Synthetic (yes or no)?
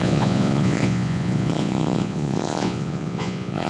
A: yes